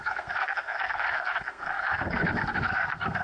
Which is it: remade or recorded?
remade